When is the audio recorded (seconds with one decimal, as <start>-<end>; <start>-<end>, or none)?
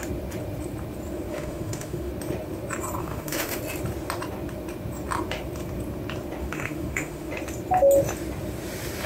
0.0-1.3; 2.1-3.0; 3.6-6.4; 7.3-9.1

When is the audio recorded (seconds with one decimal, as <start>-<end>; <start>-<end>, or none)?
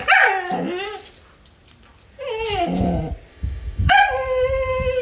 0.0-3.3; 4.0-5.0